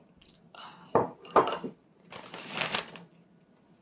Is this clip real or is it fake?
real